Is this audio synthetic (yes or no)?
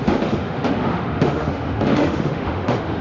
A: yes